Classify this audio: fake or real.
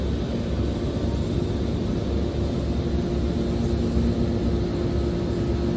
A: real